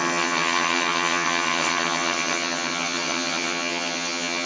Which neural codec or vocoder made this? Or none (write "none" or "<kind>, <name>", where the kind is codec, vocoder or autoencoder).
vocoder, HiFi-GAN